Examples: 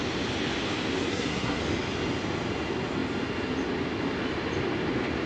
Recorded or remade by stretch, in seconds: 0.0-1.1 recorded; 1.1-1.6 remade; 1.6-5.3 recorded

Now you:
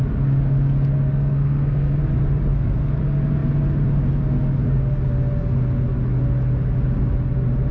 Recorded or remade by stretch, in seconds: 0.0-1.1 recorded; 1.1-2.0 remade; 2.0-2.5 recorded; 2.5-3.0 remade; 3.0-7.7 recorded